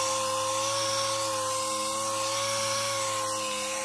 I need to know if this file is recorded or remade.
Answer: recorded